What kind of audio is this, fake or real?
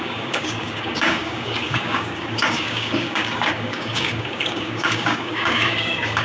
fake